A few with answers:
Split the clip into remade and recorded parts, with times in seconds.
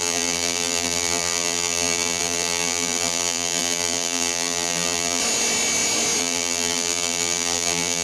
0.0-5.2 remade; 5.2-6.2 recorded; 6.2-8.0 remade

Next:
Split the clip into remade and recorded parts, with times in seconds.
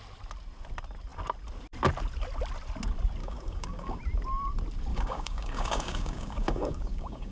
0.0-3.2 recorded; 3.2-4.0 remade; 4.0-4.9 recorded; 4.9-7.3 remade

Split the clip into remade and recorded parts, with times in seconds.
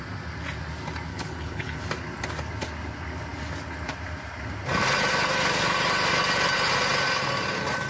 0.0-1.1 recorded; 1.1-1.8 remade; 1.8-7.9 recorded